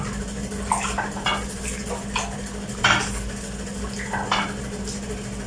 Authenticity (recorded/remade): recorded